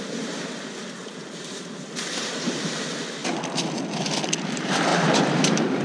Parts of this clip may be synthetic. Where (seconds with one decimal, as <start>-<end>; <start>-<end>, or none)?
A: 1.0-2.6; 4.9-5.8